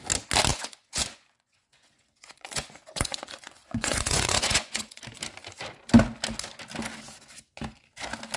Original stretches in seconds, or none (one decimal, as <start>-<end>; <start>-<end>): 0.0-0.5; 5.0-8.4